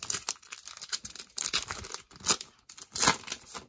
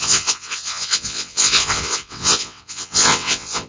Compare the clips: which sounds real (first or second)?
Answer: first